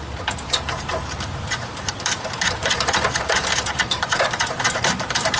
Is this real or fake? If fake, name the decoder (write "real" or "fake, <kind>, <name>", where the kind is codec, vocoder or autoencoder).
fake, vocoder, BigVGAN v2